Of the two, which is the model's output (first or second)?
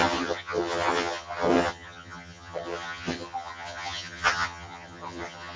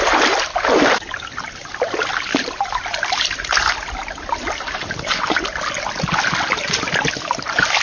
first